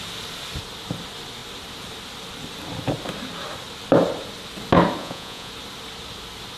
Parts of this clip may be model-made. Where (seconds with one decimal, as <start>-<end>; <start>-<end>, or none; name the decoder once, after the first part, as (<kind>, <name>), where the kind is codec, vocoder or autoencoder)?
5.0-5.5 (vocoder, Vocos)